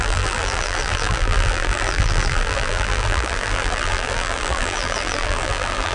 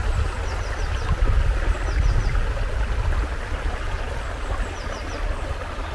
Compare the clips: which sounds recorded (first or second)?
second